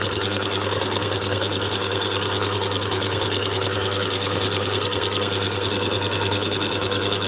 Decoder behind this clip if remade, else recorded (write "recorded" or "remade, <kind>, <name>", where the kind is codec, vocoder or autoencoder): remade, codec, SNAC